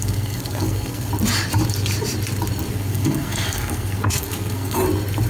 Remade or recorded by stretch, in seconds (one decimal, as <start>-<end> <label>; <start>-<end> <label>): 0.0-1.1 remade; 1.1-2.7 recorded; 2.7-4.8 remade; 4.8-5.3 recorded